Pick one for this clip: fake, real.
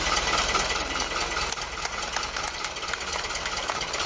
real